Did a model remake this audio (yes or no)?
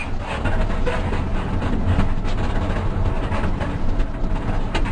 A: no